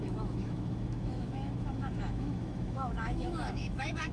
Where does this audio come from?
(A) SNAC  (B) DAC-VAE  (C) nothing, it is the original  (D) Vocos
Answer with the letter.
B